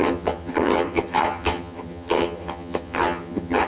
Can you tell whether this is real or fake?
fake